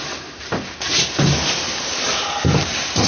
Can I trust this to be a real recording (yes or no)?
yes